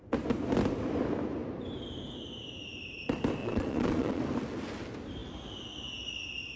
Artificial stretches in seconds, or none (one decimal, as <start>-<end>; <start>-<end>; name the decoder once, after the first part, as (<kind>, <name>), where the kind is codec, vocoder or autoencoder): 3.4-4.2 (vocoder, Vocos)